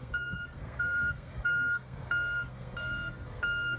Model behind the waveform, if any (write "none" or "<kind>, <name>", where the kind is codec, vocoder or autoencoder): codec, SNAC